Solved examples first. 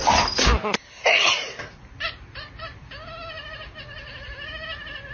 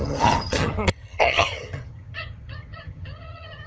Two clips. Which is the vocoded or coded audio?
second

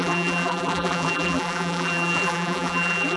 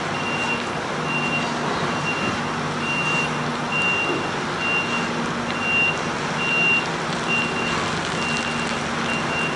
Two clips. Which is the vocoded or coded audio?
first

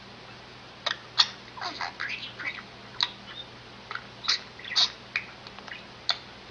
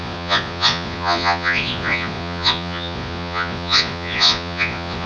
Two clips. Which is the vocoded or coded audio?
second